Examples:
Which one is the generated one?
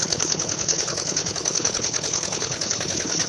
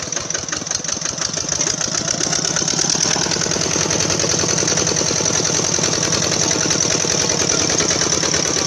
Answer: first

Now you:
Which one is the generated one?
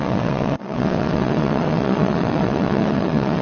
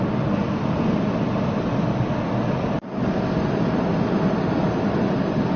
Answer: first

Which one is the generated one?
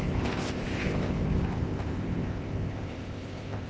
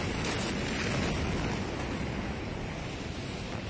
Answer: first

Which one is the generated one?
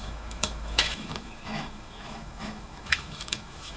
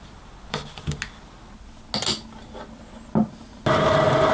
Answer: first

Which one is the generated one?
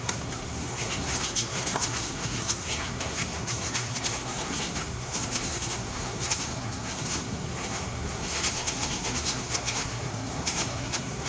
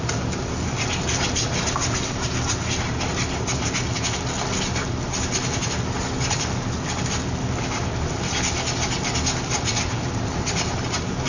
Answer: first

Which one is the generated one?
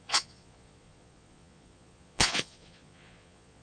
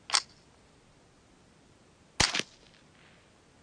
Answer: first